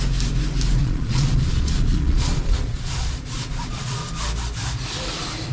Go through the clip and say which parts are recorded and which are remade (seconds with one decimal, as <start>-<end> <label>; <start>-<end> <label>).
0.0-0.8 recorded; 0.8-4.1 remade; 4.1-5.5 recorded